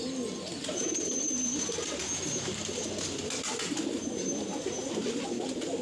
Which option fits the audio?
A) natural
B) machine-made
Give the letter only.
A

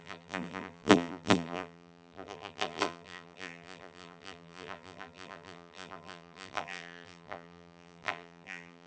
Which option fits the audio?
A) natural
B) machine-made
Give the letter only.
B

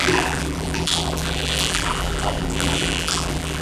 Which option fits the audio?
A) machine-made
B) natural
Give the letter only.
A